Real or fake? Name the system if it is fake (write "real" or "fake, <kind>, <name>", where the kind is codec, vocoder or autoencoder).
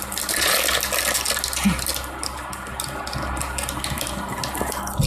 real